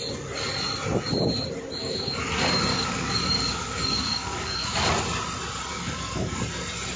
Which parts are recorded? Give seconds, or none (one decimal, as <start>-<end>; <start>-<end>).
0.0-1.8; 2.3-2.7; 4.9-5.7; 6.4-7.0